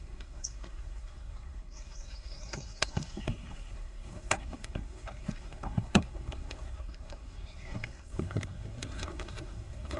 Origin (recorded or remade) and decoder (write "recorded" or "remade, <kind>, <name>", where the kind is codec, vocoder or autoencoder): remade, codec, SNAC